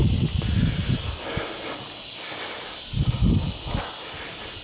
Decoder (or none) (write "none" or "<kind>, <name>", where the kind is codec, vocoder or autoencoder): none